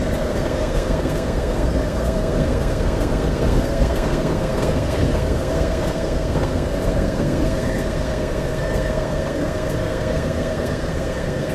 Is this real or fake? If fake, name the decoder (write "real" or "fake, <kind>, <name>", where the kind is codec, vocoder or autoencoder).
fake, codec, SNAC